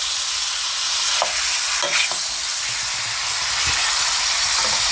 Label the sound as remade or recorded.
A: recorded